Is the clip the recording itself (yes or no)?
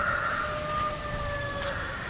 yes